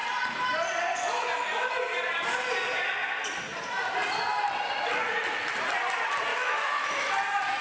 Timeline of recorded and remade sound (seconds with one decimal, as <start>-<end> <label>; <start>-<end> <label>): 0.0-6.3 recorded; 6.3-7.1 remade; 7.1-7.6 recorded